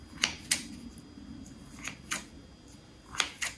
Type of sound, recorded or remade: recorded